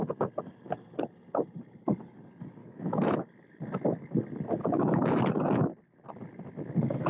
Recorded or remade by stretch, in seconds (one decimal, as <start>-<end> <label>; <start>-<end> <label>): 0.0-2.6 recorded; 2.6-3.2 remade; 3.2-4.6 recorded; 4.6-5.2 remade; 5.2-7.1 recorded